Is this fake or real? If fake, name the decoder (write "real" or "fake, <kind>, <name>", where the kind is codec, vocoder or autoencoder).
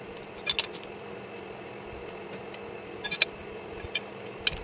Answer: real